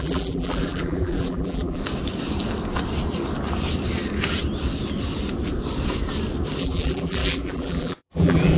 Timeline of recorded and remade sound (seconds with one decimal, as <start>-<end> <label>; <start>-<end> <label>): 0.0-1.8 remade; 1.8-6.6 recorded; 6.6-8.6 remade